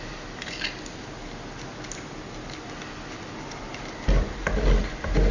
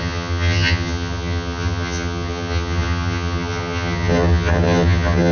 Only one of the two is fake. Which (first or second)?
second